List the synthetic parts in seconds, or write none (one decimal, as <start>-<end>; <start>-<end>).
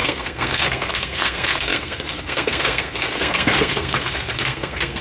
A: 0.0-5.0